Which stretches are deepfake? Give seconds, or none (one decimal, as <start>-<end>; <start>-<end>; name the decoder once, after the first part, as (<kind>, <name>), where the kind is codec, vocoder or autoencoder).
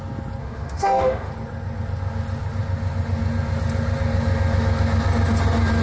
0.4-1.3 (autoencoder, DAC-VAE)